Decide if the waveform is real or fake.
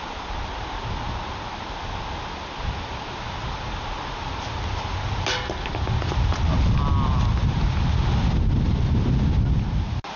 real